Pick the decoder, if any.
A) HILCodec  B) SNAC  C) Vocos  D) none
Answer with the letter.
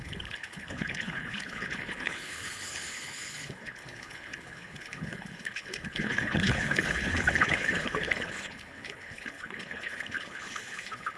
A